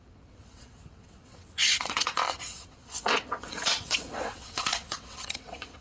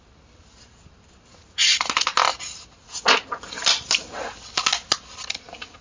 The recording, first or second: second